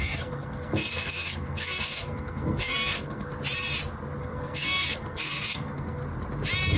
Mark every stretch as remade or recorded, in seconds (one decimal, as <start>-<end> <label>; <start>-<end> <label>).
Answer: 0.0-3.3 remade; 3.3-4.2 recorded; 4.2-6.0 remade; 6.0-6.8 recorded